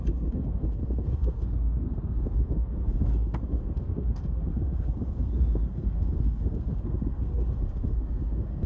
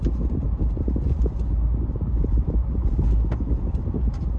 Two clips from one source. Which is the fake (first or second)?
first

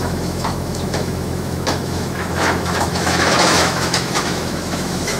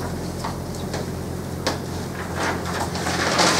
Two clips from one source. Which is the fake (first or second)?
first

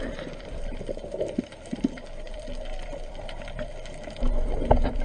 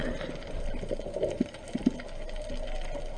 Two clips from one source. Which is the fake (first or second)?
first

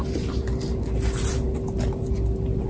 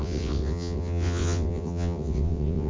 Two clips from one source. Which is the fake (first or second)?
second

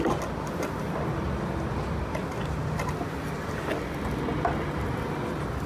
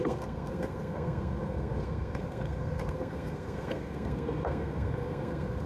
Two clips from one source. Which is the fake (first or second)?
second